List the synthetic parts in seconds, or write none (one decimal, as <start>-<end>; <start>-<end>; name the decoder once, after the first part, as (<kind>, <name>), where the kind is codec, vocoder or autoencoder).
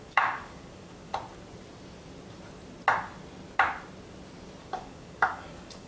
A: 0.0-1.1 (codec, DAC); 4.6-5.9